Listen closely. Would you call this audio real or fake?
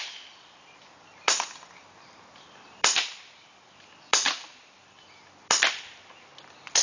fake